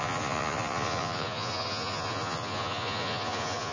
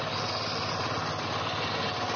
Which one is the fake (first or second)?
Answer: first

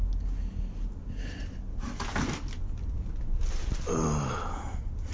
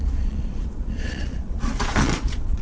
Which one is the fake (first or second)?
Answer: second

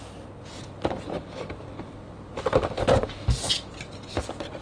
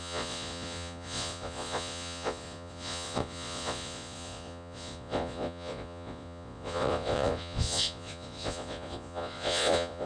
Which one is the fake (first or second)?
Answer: second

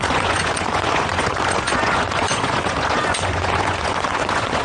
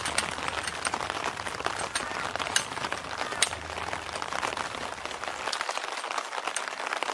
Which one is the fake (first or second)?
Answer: first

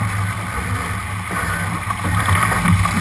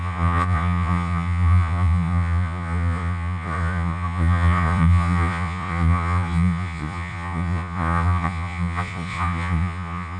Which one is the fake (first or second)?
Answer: second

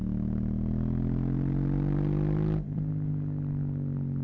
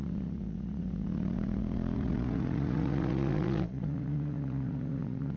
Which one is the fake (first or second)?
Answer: second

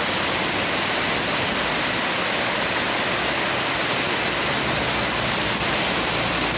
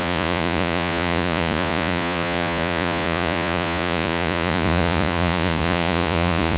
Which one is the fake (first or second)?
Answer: second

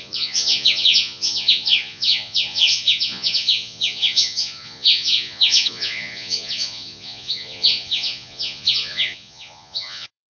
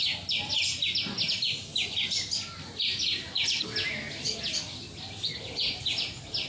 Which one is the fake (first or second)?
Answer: first